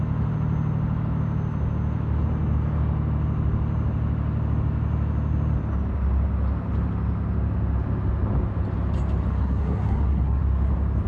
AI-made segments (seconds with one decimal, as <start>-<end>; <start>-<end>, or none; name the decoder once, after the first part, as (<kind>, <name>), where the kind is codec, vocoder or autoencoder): 9.3-10.4 (codec, SNAC)